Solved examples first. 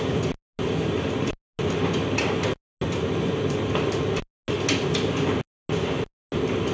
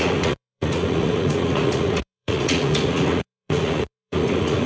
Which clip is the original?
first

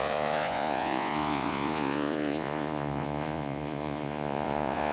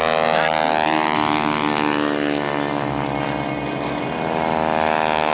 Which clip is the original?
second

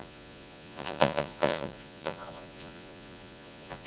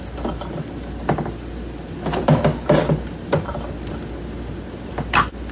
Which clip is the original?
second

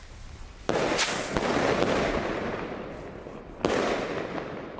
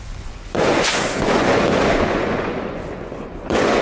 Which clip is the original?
first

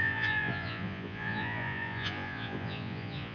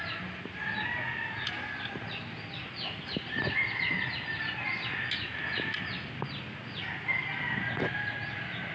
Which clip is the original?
second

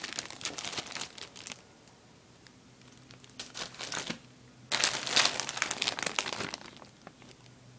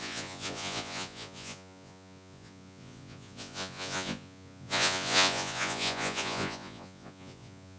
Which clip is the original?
first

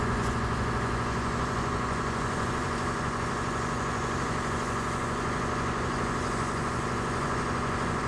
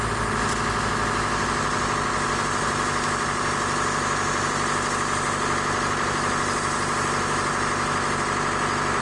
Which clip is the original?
second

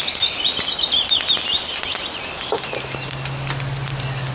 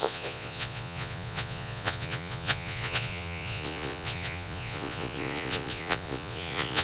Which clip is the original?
first